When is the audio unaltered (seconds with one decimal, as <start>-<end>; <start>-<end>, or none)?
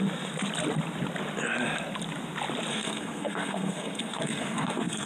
0.0-2.7